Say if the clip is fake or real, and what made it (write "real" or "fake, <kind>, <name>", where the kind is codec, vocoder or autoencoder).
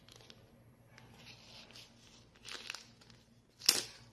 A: real